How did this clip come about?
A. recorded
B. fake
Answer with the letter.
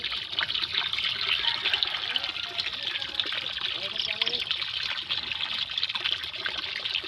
A